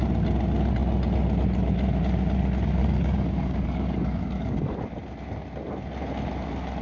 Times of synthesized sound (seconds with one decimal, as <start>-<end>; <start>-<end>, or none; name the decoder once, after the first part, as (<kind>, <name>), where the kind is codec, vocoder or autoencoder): 2.8-4.8 (codec, DAC)